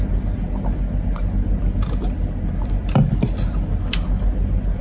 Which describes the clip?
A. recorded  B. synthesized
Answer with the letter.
A